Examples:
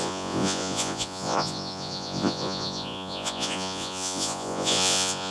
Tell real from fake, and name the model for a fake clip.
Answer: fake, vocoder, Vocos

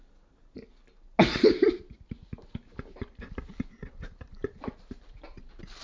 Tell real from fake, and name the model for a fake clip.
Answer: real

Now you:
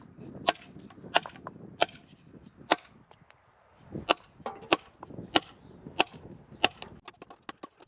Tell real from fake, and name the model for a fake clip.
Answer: real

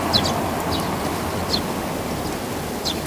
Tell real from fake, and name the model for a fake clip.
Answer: real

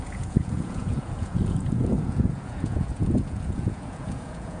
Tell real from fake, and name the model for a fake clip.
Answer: fake, vocoder, Vocos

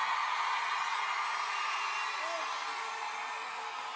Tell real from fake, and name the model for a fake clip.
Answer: real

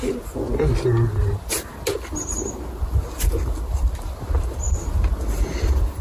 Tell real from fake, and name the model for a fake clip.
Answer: real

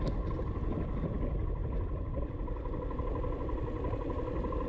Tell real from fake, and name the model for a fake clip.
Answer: fake, vocoder, BigVGAN v2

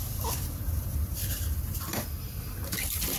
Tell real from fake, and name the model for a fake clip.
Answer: fake, vocoder, BigVGAN v2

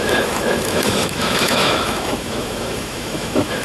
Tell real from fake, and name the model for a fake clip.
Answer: fake, autoencoder, DAC-VAE